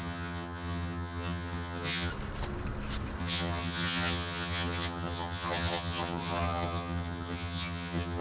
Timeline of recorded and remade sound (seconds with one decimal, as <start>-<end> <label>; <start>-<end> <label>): 0.0-2.1 remade; 2.1-3.2 recorded; 3.2-8.2 remade